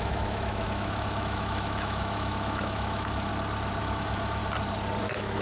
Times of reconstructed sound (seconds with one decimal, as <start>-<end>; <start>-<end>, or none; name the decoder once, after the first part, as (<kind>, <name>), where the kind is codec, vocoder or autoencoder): 0.0-3.3 (autoencoder, DAC-VAE); 3.8-4.4; 5.0-5.4